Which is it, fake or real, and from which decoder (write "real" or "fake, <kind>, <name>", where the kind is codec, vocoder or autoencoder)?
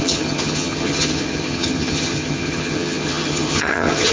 fake, vocoder, HiFi-GAN